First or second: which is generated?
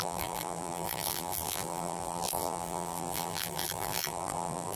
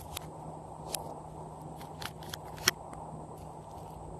first